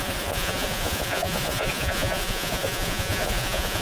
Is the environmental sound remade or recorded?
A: remade